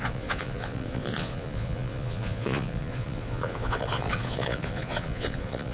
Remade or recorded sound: remade